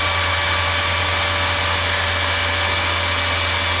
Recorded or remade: recorded